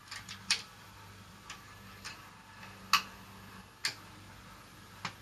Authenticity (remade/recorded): recorded